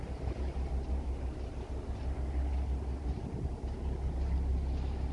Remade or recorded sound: recorded